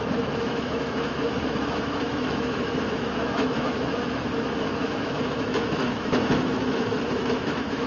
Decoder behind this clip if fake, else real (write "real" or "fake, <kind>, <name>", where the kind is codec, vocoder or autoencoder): fake, autoencoder, DAC-VAE